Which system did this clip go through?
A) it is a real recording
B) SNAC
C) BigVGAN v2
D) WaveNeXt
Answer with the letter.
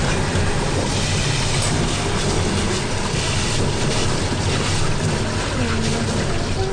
A